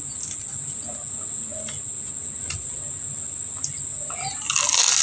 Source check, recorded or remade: recorded